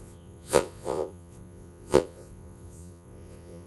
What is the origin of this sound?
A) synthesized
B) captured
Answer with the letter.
A